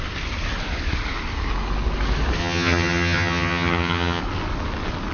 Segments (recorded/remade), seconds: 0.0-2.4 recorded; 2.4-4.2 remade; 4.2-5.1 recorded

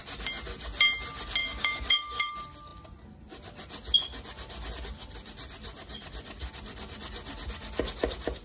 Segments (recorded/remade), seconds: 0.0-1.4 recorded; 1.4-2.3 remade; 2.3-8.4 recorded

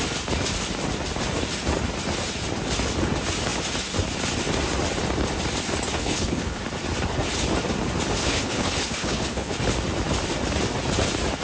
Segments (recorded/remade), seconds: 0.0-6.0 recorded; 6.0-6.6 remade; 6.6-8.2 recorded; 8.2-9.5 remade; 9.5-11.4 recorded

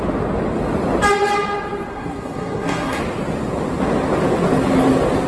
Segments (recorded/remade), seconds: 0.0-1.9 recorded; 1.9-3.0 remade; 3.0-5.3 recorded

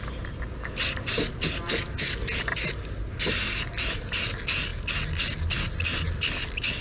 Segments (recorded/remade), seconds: 0.0-6.8 recorded

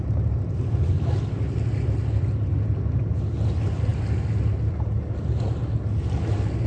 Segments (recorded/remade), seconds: 0.0-6.7 recorded